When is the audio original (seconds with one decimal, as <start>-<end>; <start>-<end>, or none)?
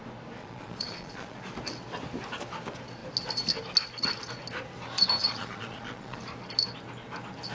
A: 0.0-0.4; 1.4-5.2; 6.2-7.5